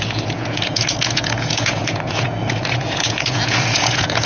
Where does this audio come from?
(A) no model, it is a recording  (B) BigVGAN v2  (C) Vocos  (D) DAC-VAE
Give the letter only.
C